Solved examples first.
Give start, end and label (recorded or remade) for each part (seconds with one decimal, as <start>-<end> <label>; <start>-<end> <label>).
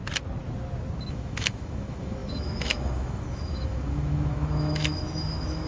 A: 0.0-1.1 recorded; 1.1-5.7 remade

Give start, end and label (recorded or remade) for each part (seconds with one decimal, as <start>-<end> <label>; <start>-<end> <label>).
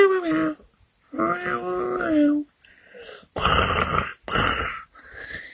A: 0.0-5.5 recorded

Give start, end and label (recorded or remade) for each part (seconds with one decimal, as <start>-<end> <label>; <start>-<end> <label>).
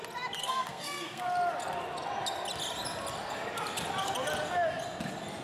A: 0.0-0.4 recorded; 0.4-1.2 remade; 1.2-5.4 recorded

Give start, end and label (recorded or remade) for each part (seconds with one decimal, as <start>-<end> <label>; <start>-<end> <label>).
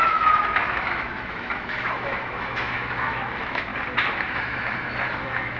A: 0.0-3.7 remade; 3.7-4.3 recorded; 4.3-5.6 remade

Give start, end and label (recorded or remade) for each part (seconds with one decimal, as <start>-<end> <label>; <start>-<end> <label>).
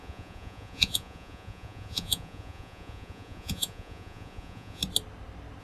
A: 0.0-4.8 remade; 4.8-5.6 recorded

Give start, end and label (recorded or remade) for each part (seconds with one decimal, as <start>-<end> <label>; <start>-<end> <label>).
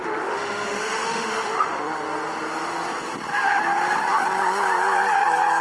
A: 0.0-1.8 remade; 1.8-5.6 recorded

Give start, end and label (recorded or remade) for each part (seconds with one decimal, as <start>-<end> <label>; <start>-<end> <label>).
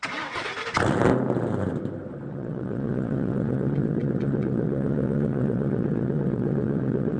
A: 0.0-0.5 remade; 0.5-2.3 recorded; 2.3-7.2 remade